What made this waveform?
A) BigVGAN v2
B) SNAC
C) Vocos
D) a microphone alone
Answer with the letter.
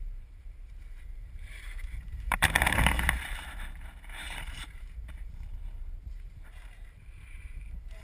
A